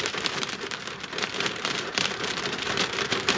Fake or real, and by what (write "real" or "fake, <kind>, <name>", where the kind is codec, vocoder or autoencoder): fake, vocoder, BigVGAN v2